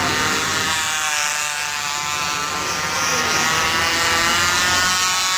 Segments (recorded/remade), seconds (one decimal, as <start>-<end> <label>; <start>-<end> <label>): 0.0-5.4 recorded